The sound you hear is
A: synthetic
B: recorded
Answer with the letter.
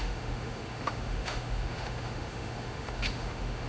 A